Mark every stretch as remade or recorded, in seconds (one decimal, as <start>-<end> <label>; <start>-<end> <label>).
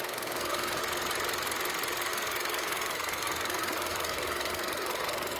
0.0-0.8 remade; 0.8-2.1 recorded; 2.1-5.4 remade